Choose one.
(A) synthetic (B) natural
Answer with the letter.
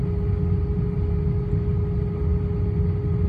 B